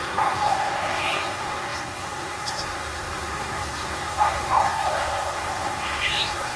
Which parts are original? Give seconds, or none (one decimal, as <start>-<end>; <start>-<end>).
none